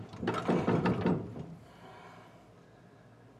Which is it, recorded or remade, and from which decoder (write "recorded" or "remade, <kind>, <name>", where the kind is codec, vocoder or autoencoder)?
recorded